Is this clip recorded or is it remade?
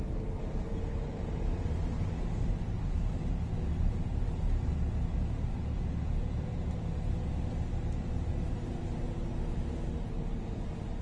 recorded